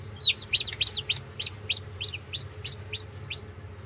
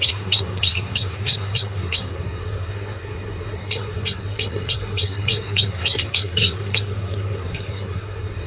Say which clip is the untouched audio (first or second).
first